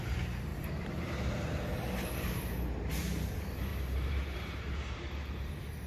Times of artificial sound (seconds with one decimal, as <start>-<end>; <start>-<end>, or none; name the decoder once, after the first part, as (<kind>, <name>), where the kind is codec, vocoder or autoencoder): 0.5-3.3 (vocoder, BigVGAN v2); 3.7-5.1